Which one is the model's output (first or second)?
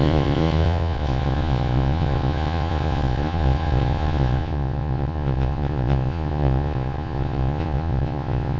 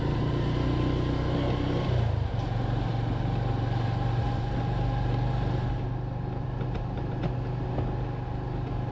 first